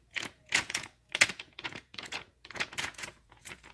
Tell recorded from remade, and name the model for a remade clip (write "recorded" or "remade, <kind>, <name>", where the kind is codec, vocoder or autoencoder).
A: remade, vocoder, Vocos